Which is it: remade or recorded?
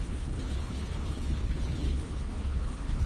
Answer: remade